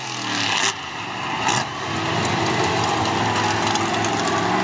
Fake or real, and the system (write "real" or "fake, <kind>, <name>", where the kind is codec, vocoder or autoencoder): real